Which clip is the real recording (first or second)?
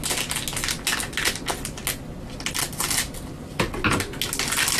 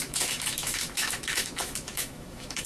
first